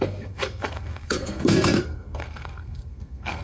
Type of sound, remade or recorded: remade